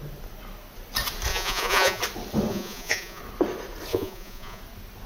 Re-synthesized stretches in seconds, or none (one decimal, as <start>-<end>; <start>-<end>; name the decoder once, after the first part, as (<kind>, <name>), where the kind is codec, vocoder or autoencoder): 1.3-2.0 (vocoder, Vocos); 2.5-3.2; 3.9-4.6